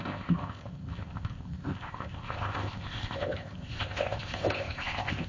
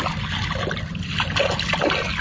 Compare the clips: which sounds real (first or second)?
second